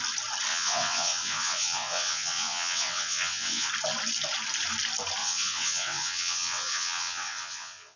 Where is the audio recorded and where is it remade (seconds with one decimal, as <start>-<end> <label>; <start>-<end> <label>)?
0.0-0.5 recorded; 0.5-3.7 remade; 3.7-5.2 recorded; 5.2-8.0 remade